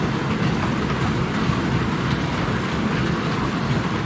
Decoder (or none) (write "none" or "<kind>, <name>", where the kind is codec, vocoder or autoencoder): none